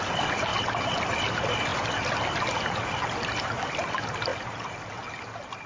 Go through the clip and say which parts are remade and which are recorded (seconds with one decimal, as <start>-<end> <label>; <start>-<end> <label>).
0.0-5.7 recorded